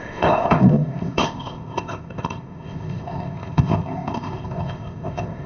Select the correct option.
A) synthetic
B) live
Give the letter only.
A